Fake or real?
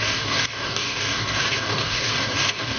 fake